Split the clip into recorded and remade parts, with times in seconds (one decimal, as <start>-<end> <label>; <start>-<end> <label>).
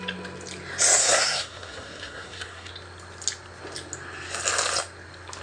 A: 0.0-1.0 recorded; 1.0-2.7 remade; 2.7-5.4 recorded